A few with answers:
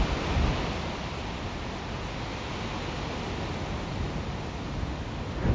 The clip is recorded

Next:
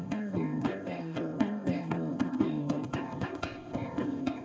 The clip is remade